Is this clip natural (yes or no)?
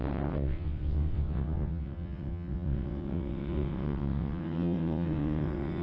no